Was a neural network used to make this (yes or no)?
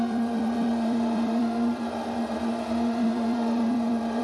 yes